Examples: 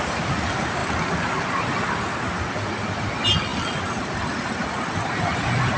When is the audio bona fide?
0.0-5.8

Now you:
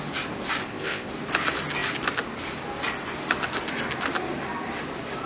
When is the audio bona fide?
0.0-0.6; 1.1-5.3

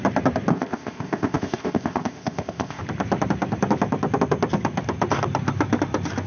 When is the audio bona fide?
0.0-0.5; 2.8-6.3

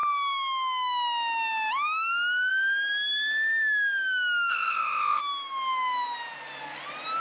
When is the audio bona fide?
0.0-4.5; 5.2-7.2

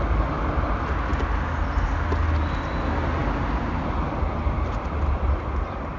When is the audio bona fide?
0.0-6.0

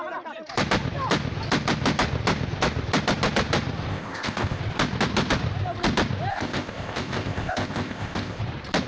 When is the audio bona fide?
0.0-3.9; 4.6-6.3; 8.4-8.9

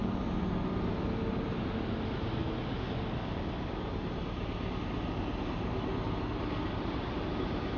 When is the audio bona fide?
0.0-7.8